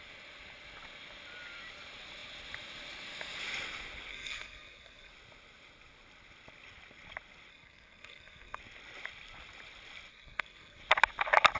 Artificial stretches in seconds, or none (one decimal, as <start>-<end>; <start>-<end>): 4.1-5.1; 7.5-8.6; 10.1-10.8